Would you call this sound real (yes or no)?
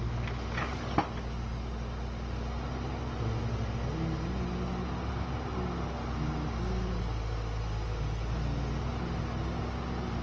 yes